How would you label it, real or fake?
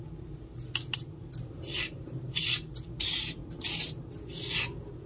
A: real